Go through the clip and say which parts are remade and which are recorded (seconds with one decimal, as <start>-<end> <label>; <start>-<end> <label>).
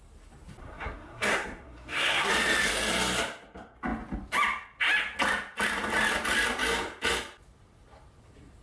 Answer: 0.0-0.6 recorded; 0.6-2.3 remade; 2.3-8.6 recorded